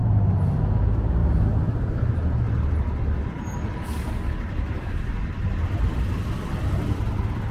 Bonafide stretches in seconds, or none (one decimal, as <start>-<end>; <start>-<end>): 0.0-7.5